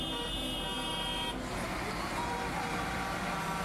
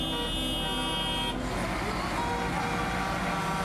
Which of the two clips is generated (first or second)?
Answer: first